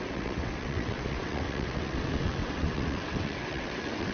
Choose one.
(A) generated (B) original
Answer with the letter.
A